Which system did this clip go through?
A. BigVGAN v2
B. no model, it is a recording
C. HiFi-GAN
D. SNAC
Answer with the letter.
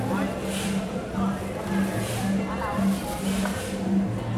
B